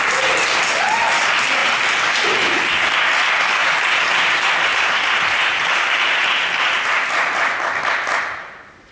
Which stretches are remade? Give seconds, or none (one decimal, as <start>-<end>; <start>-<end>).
3.6-7.8

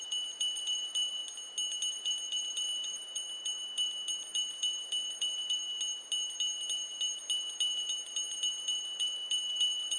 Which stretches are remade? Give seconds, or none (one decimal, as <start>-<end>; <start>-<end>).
0.0-1.2; 1.9-5.6; 8.6-10.0